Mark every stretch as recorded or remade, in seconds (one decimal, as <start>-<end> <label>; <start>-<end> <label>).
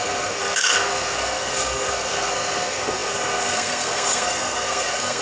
0.0-5.2 remade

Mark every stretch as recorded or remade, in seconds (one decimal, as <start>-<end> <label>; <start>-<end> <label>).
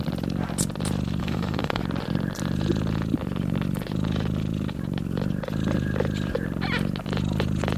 0.0-1.2 recorded; 1.2-1.8 remade; 1.8-7.8 recorded